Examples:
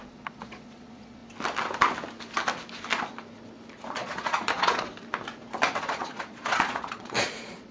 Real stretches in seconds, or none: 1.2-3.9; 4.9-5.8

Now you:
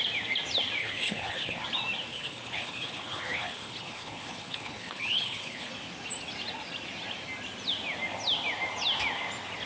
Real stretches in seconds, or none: 0.0-0.8; 1.6-2.1; 5.7-9.7

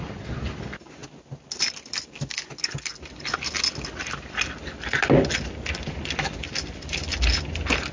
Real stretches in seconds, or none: 0.0-7.9

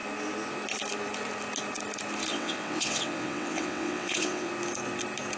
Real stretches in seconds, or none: 0.0-2.3; 4.5-5.4